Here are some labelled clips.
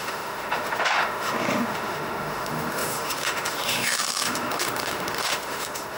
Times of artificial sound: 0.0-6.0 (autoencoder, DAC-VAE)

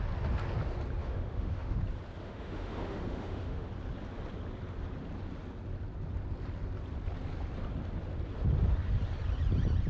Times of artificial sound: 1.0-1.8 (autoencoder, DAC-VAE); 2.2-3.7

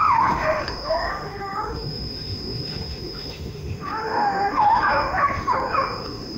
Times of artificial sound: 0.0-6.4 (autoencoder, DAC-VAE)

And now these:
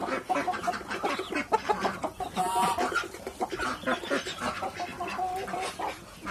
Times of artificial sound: none

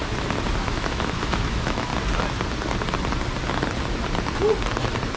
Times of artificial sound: 0.6-1.9 (autoencoder, DAC-VAE)